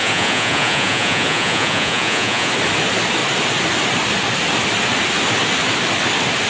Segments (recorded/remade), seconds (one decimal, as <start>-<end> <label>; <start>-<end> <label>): 0.0-2.5 remade; 2.5-6.5 recorded